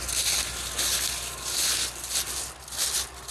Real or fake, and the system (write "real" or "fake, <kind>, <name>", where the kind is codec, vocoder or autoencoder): real